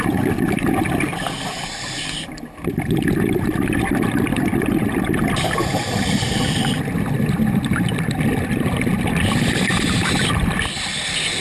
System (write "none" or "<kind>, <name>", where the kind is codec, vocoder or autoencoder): none